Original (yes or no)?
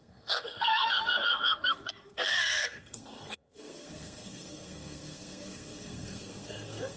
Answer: no